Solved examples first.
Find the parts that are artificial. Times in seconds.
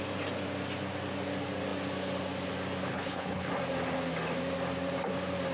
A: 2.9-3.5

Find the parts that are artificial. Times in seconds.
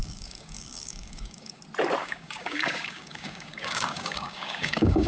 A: 0.0-1.6; 2.0-5.1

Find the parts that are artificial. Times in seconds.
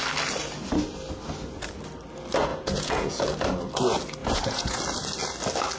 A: 2.5-3.2; 4.2-4.8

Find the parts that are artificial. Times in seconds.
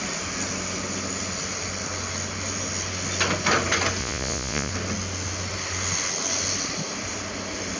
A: 4.0-4.7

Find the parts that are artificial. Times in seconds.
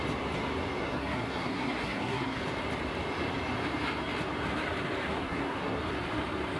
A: 0.8-2.4; 5.2-5.8